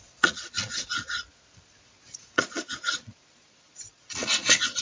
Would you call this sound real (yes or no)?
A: no